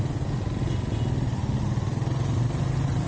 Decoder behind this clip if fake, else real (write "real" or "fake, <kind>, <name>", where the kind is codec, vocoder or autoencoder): real